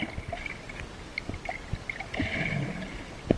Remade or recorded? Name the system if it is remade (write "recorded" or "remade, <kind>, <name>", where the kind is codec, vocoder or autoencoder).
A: recorded